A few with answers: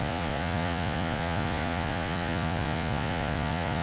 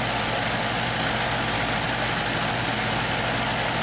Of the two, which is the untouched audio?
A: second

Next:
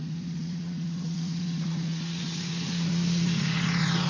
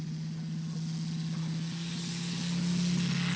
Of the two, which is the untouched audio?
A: second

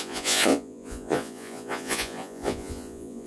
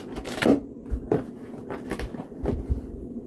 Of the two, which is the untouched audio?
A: second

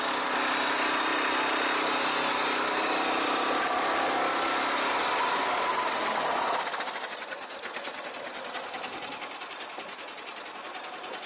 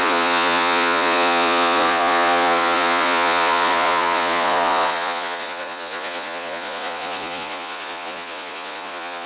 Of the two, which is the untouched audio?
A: first